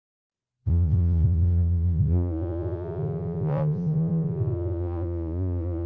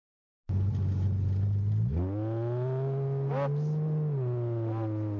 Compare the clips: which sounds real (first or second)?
second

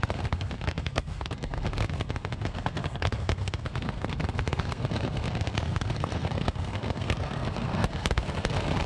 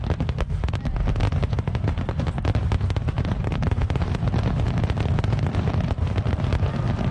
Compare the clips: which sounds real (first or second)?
second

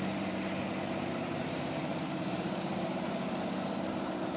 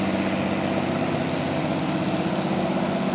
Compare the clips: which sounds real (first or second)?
second